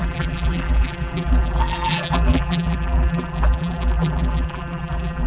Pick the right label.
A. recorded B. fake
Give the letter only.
B